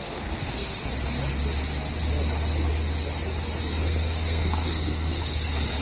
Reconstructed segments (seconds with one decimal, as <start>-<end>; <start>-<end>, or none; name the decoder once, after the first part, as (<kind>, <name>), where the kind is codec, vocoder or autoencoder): 0.0-0.9 (codec, SNAC); 3.7-5.2